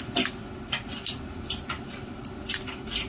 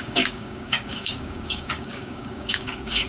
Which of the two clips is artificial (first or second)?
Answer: second